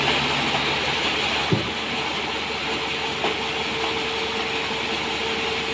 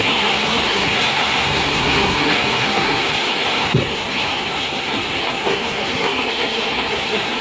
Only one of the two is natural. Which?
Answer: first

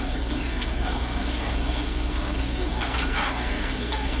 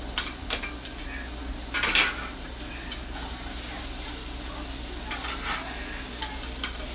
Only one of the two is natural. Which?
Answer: second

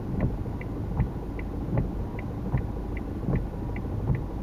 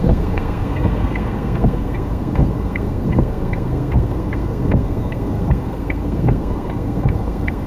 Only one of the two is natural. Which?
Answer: first